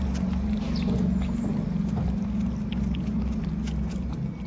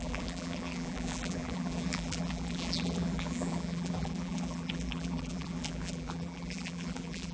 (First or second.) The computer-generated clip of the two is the second